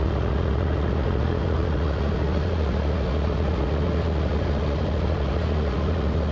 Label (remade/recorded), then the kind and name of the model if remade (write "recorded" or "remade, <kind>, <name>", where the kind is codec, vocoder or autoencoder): remade, vocoder, Vocos